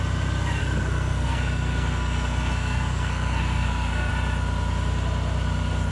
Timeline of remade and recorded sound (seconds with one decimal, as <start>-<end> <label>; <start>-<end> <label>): 0.0-0.6 recorded; 0.6-4.1 remade; 4.1-5.9 recorded